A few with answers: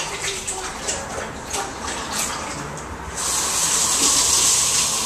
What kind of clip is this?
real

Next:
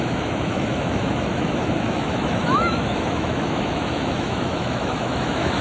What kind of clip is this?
fake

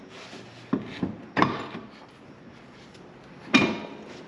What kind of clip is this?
real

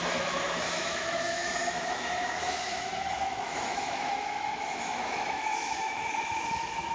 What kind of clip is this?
fake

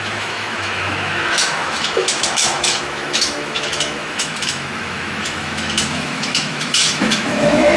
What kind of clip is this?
fake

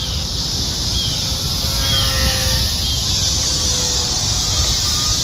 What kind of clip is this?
real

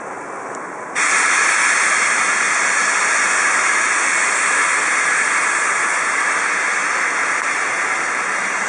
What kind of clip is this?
real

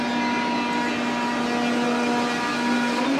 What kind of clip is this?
real